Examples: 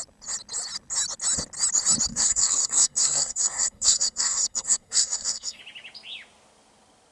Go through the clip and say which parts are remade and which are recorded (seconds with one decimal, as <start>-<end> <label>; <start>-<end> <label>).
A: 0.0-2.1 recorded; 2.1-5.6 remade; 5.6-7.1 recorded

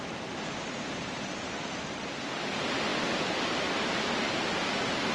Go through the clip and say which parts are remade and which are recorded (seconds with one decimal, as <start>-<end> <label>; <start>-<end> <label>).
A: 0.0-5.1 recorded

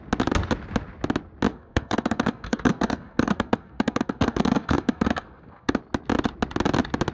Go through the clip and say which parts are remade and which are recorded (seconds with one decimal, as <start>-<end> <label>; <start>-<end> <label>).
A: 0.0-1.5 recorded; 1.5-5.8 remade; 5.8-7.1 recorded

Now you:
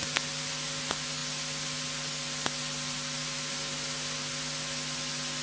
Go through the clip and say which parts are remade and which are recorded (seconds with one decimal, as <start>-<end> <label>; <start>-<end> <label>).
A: 0.0-5.4 recorded

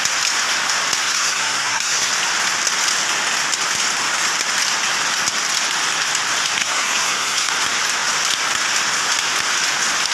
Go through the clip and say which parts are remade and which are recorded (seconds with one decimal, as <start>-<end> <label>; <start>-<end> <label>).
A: 0.0-1.0 recorded; 1.0-2.1 remade; 2.1-6.6 recorded; 6.6-7.5 remade; 7.5-10.1 recorded